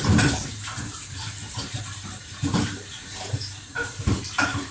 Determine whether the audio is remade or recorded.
remade